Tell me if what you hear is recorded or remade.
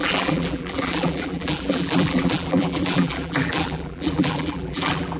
remade